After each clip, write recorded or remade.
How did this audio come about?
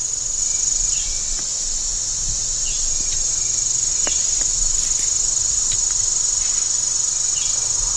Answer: recorded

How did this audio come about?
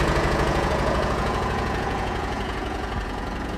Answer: remade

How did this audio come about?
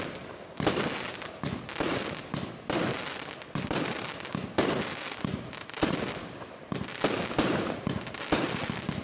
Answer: recorded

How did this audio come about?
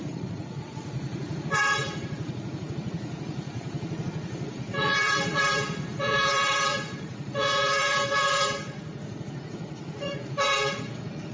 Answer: remade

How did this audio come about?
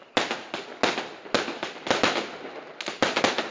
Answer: recorded